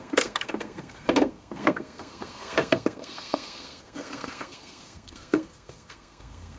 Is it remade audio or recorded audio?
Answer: remade